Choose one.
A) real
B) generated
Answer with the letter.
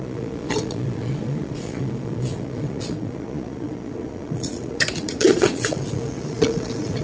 B